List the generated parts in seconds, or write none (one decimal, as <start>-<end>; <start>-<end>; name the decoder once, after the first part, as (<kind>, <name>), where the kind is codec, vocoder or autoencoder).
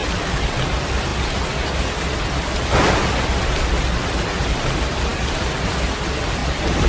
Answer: 5.1-5.7 (vocoder, BigVGAN v2); 6.4-6.9